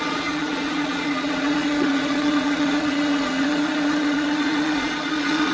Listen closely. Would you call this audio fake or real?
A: fake